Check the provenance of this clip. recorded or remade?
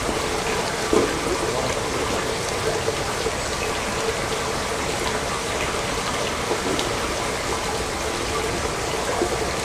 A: recorded